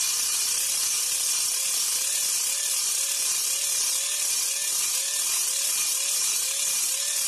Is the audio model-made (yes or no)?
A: no